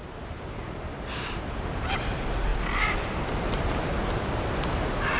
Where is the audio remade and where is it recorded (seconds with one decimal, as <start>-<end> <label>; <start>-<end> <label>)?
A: 0.0-2.0 remade; 2.0-5.2 recorded